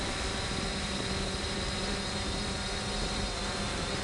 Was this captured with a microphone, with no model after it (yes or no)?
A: no